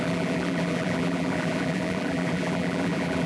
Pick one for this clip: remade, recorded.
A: remade